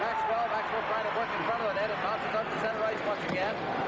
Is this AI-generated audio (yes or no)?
no